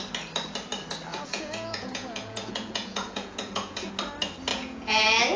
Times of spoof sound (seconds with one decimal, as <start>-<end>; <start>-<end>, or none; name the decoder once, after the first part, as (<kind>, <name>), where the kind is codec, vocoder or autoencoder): 1.1-3.9 (vocoder, Vocos); 4.5-5.4